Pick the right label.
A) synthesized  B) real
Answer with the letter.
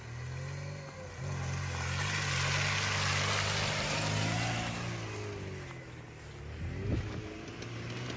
B